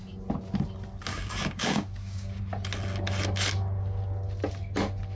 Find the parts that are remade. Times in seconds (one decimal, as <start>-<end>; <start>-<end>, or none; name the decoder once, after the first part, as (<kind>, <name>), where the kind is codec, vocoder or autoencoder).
1.1-2.4 (codec, DAC)